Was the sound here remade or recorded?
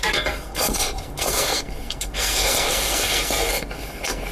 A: remade